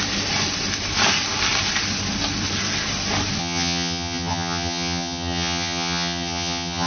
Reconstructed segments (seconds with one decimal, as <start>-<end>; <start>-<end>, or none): 3.4-6.9